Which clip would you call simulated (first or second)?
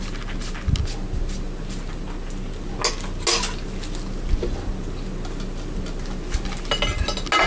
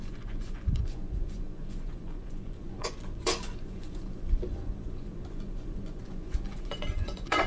second